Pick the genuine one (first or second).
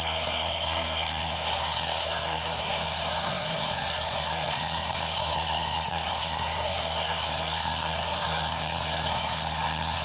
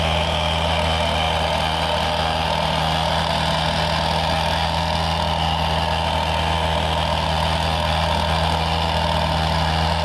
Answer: second